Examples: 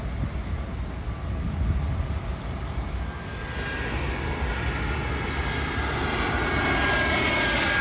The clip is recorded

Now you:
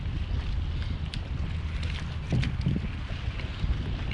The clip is recorded